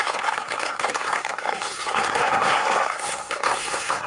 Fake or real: fake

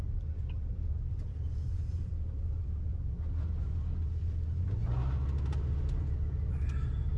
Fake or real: real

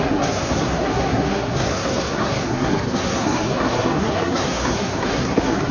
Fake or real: fake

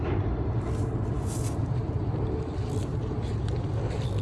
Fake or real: real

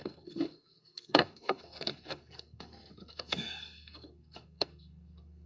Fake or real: fake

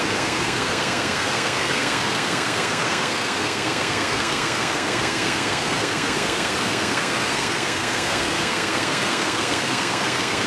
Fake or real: fake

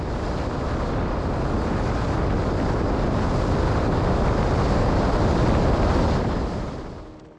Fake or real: real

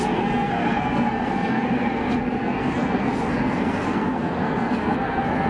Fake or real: fake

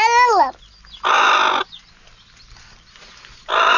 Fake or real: real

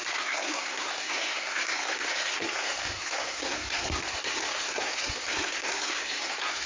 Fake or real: fake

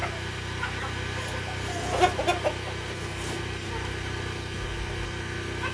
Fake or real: real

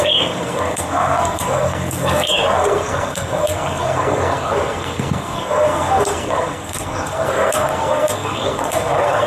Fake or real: fake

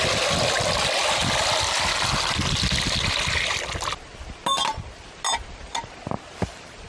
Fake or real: real